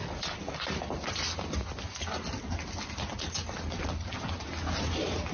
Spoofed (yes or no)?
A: no